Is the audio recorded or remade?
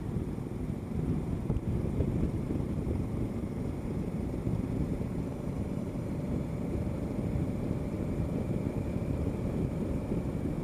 remade